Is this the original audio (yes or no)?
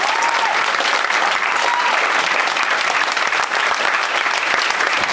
yes